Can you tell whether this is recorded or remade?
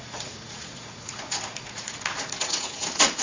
remade